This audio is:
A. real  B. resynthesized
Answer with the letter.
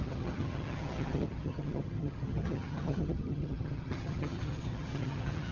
B